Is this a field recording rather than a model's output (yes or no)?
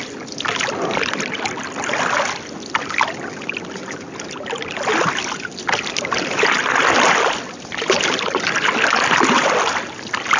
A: yes